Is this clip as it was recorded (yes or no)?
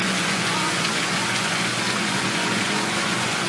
no